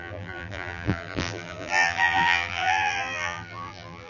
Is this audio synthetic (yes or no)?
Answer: yes